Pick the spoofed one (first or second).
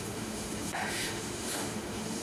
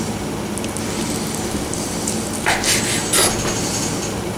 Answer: first